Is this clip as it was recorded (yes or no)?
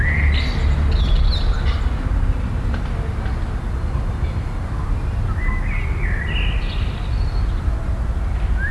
yes